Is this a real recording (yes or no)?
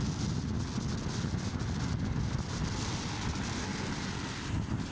yes